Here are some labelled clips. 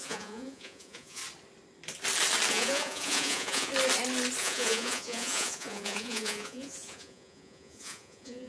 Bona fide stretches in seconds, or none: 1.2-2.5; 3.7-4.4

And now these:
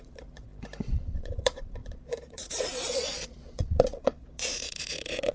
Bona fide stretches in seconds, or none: 0.5-1.0